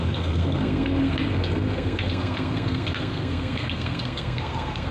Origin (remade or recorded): remade